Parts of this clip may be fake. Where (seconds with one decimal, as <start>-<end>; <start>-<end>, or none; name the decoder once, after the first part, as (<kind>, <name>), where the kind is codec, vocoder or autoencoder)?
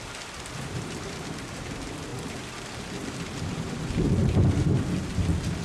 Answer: none